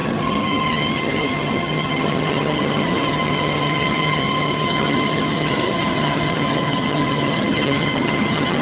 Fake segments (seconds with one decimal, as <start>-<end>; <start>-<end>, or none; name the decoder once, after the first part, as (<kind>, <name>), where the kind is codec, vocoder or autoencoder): 0.0-8.6 (vocoder, HiFi-GAN)